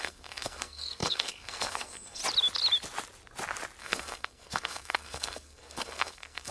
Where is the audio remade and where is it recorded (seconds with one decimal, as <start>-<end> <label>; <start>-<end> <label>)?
0.0-2.2 remade; 2.2-3.8 recorded; 3.8-6.5 remade